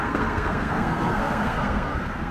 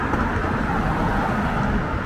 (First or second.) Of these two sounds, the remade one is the first